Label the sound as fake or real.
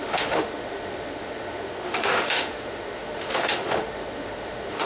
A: fake